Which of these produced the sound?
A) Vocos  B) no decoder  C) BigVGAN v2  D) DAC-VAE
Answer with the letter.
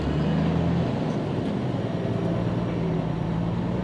B